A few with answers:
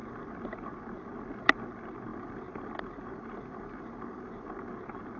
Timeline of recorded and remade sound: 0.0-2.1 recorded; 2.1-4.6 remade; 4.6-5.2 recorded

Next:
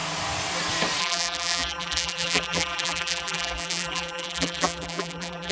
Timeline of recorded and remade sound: 0.0-1.0 recorded; 1.0-5.5 remade

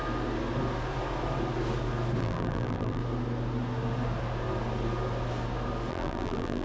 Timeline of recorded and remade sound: 0.0-2.2 recorded; 2.2-3.0 remade; 3.0-5.9 recorded; 5.9-6.6 remade